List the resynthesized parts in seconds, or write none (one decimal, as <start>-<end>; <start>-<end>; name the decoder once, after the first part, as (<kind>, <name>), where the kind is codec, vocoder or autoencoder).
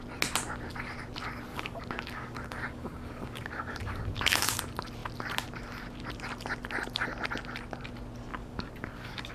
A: 1.5-4.6 (codec, DAC); 8.3-9.3